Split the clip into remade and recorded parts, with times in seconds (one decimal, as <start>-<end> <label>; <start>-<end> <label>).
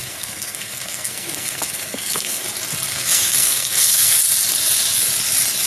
0.0-2.4 remade; 2.4-2.9 recorded; 2.9-4.2 remade; 4.2-5.7 recorded